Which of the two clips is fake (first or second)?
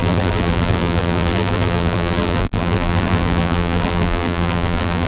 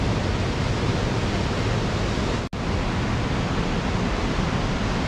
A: first